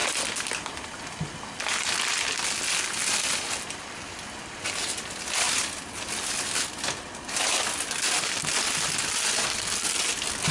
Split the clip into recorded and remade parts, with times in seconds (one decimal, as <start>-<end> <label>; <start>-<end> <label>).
0.0-10.5 recorded